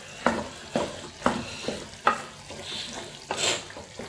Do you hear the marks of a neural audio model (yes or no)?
no